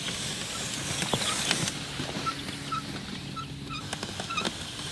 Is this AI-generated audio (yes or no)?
no